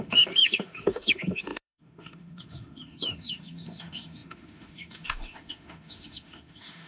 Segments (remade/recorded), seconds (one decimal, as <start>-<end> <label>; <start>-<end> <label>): 0.0-6.9 remade